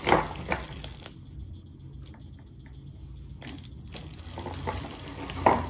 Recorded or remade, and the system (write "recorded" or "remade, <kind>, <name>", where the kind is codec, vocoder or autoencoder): recorded